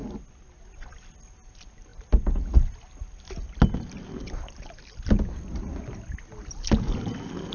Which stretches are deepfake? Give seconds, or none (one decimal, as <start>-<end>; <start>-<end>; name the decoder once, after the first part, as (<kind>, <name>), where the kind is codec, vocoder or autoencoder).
none